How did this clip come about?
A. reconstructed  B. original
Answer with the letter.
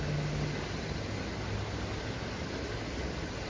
B